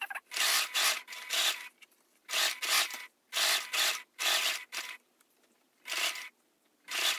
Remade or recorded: remade